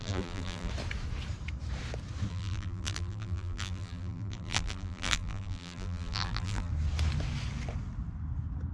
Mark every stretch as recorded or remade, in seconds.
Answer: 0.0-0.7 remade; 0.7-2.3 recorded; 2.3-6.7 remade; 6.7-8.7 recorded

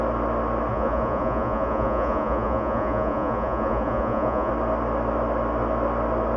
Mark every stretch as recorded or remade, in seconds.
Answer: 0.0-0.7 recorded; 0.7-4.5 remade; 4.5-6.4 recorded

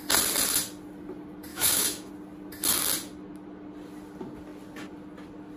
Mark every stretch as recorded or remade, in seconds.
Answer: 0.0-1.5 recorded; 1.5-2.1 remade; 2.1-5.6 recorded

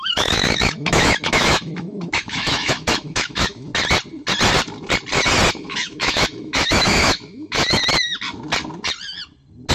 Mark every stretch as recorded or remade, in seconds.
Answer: 0.0-3.7 remade; 3.7-5.5 recorded; 5.5-7.8 remade; 7.8-9.7 recorded

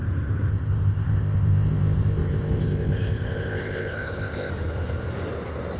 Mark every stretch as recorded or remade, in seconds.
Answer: 0.0-0.5 recorded; 0.5-4.5 remade; 4.5-5.8 recorded

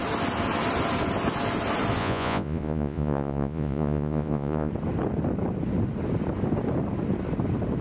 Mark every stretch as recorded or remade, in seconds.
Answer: 0.0-2.0 recorded; 2.0-4.7 remade; 4.7-7.8 recorded